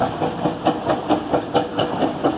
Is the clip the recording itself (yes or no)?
yes